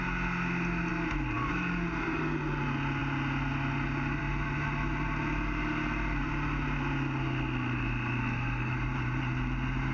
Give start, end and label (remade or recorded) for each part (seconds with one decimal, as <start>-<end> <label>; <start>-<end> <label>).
0.0-8.2 recorded; 8.2-8.7 remade; 8.7-9.9 recorded